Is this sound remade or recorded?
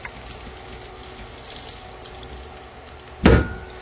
recorded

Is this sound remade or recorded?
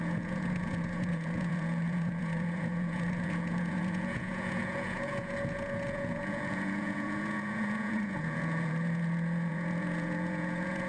remade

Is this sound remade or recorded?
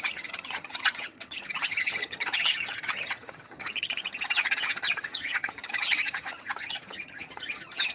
remade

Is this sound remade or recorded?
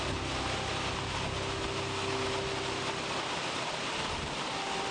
recorded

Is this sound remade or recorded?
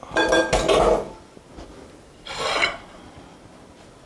recorded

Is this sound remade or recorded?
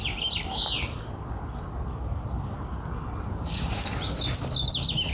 recorded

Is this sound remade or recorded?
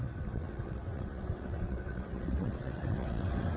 remade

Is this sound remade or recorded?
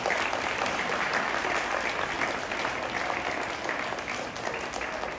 recorded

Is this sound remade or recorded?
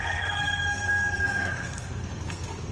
remade